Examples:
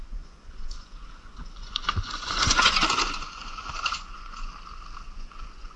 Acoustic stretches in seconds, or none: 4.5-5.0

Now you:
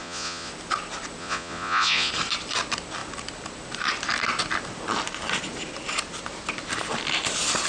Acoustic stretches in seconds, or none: 0.5-1.2; 2.1-7.7

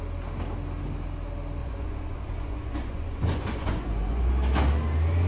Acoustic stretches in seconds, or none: 0.0-1.6; 4.3-5.3